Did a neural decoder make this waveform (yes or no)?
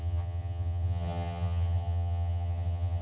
yes